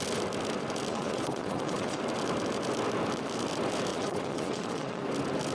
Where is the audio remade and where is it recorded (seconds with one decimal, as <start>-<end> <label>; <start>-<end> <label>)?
0.0-0.9 recorded; 0.9-2.0 remade; 2.0-3.9 recorded; 3.9-5.0 remade; 5.0-5.5 recorded

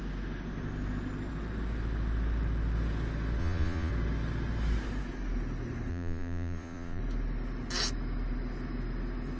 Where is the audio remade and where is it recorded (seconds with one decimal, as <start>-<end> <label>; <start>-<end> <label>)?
0.0-3.4 recorded; 3.4-3.9 remade; 3.9-5.9 recorded; 5.9-7.0 remade; 7.0-9.4 recorded